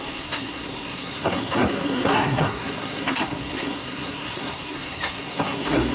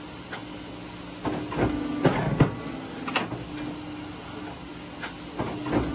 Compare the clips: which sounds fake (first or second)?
first